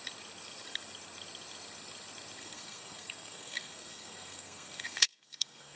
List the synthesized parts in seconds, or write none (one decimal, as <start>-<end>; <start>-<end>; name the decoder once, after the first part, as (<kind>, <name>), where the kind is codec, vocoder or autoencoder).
2.4-5.8 (codec, SNAC)